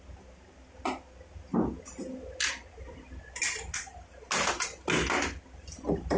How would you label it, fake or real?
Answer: real